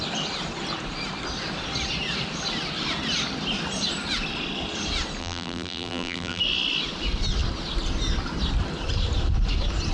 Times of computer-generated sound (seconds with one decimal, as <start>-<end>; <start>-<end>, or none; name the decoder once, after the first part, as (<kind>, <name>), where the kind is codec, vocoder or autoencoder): 5.2-6.4 (vocoder, BigVGAN v2)

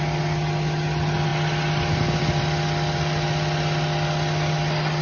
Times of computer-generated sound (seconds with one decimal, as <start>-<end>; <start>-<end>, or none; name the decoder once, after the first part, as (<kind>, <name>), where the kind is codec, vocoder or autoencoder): none

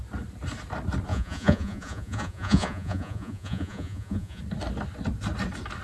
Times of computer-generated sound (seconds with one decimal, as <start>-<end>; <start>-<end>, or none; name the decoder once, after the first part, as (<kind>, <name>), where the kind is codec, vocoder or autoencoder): 1.1-4.4 (vocoder, Vocos)